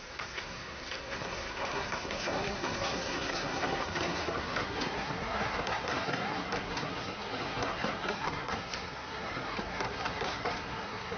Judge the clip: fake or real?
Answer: fake